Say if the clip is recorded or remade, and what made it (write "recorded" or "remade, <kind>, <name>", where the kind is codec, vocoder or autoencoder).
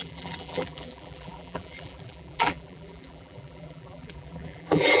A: remade, vocoder, BigVGAN v2